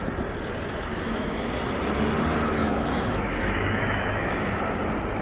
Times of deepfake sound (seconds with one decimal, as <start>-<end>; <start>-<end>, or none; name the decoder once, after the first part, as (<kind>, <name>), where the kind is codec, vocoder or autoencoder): 0.9-1.5 (autoencoder, DAC-VAE); 2.6-4.6

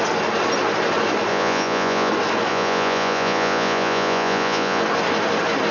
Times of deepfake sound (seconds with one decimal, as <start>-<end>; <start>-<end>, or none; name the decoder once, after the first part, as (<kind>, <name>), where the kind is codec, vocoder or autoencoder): 1.3-2.1 (vocoder, Vocos); 2.5-4.8

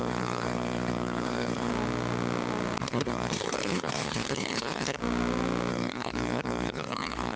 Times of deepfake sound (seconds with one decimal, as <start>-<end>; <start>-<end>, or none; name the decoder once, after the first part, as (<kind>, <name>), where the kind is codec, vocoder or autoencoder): 0.0-1.7 (codec, SNAC); 2.8-5.0; 5.7-7.4